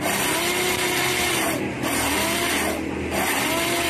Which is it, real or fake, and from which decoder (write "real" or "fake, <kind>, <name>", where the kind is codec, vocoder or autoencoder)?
real